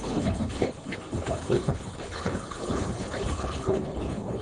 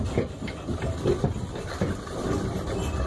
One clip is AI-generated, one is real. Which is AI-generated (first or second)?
first